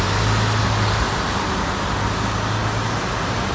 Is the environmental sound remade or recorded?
recorded